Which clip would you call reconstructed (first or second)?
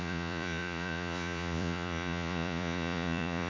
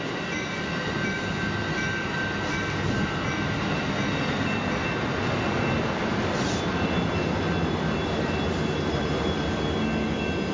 first